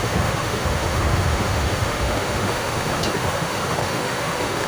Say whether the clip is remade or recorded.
remade